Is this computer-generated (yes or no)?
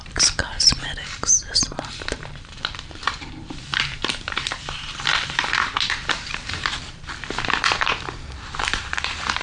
yes